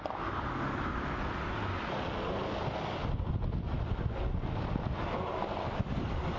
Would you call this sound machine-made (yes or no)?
no